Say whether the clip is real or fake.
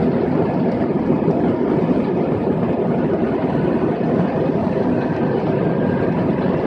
real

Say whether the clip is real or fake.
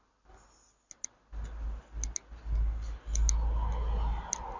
real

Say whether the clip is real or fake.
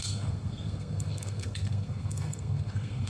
fake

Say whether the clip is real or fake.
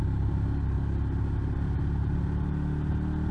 real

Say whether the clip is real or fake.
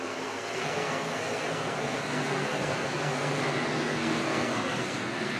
fake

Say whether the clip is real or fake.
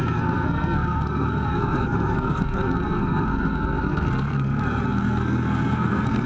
fake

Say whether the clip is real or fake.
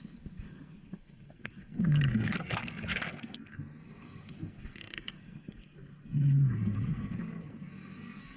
fake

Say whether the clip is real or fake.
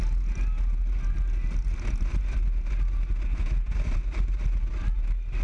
real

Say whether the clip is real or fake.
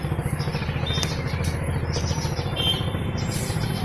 real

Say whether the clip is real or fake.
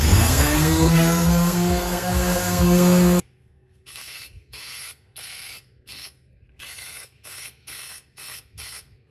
fake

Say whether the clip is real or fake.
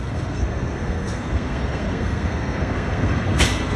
fake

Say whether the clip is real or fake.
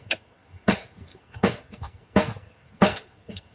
fake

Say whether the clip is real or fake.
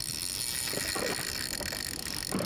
real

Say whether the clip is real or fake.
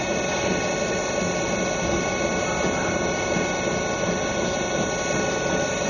real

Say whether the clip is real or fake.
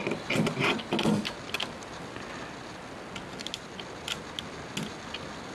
real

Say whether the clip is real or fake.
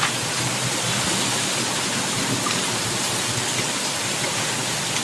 real